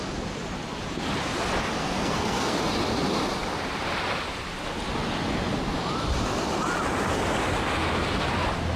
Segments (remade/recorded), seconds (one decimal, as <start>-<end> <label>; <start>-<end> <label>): 0.0-1.8 recorded; 1.8-2.6 remade; 2.6-8.8 recorded